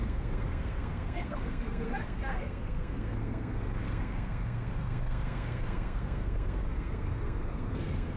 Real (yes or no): no